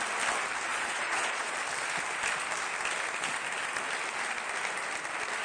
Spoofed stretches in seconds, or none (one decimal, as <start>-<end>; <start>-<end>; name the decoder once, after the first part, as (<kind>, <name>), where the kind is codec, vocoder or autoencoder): 0.7-1.5 (vocoder, Vocos)